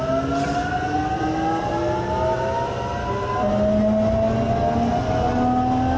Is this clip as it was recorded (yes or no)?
yes